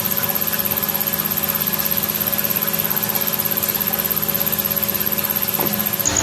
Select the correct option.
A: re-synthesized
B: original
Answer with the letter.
B